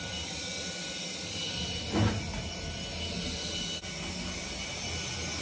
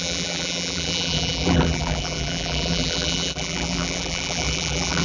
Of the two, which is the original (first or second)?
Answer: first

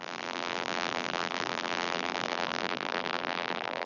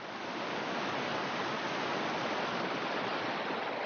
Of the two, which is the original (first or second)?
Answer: second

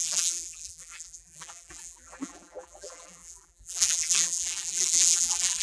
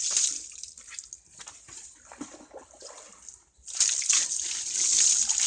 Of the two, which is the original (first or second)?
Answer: second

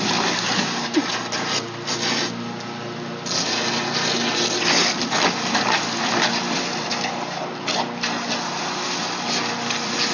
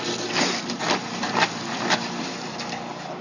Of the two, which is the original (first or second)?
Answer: first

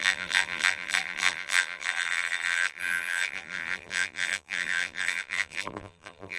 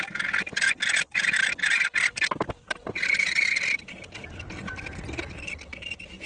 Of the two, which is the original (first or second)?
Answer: second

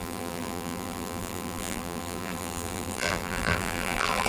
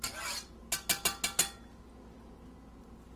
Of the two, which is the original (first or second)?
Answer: second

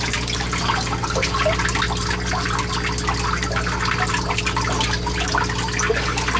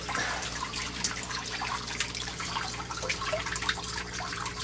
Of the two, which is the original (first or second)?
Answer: first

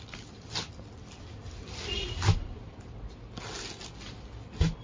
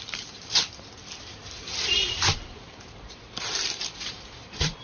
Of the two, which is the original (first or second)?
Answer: first